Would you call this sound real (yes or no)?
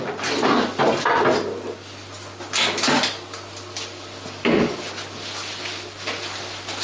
yes